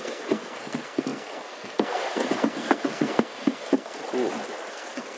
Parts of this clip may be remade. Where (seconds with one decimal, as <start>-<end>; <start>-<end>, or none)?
0.0-4.0; 4.7-5.2